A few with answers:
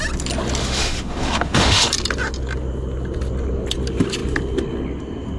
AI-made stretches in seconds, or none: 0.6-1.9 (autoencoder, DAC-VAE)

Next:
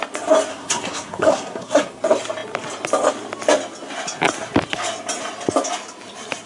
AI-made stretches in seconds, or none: 0.5-2.0 (codec, SNAC)